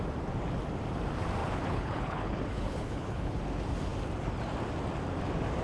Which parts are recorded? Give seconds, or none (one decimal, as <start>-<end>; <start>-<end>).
0.0-1.4; 3.4-5.6